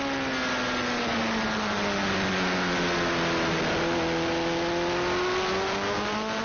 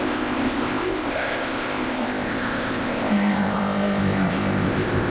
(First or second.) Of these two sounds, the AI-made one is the second